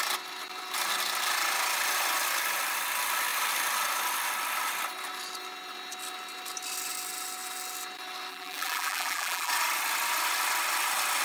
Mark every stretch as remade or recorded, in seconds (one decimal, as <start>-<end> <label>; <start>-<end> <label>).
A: 0.0-8.3 recorded; 8.3-9.5 remade; 9.5-11.2 recorded